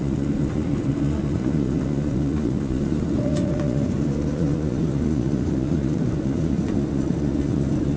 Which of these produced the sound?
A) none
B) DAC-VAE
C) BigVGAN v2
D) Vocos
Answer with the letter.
D